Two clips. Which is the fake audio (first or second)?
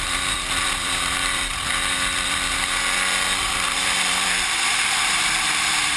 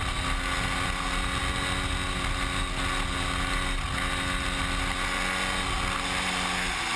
first